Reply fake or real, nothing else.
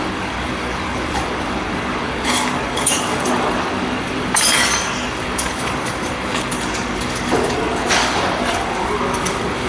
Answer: fake